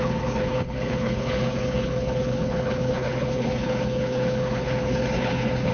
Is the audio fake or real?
fake